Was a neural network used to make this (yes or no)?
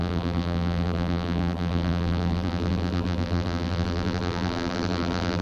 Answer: yes